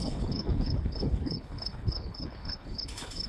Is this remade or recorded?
remade